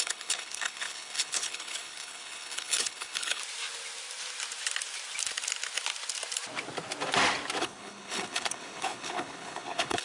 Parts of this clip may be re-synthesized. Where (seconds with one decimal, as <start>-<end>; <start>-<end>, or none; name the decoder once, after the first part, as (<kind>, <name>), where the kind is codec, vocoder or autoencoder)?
0.0-3.4 (codec, HILCodec); 7.6-10.0

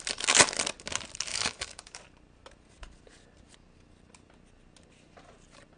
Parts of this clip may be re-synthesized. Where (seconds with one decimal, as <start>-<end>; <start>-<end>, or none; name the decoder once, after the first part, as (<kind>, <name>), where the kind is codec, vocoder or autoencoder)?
1.3-2.0 (codec, DAC)

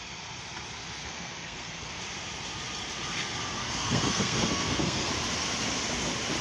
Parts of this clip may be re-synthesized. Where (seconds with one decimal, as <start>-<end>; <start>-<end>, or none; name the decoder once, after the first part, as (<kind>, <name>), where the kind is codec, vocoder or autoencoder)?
1.0-2.0 (codec, SNAC); 3.6-5.1

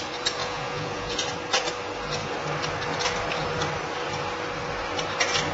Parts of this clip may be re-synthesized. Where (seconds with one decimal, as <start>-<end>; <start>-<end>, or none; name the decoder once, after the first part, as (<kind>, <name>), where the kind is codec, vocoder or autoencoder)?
0.4-1.2 (vocoder, Vocos)

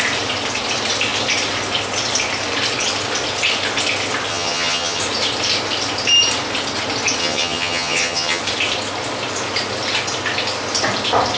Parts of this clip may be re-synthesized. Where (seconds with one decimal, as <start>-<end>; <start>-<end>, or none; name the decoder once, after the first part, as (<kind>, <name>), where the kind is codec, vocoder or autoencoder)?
4.3-5.0 (vocoder, HiFi-GAN); 7.2-8.4

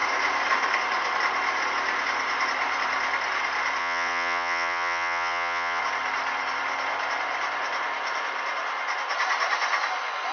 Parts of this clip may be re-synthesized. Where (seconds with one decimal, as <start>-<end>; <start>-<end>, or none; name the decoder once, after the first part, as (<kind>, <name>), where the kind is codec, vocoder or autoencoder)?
3.8-5.8 (vocoder, Vocos)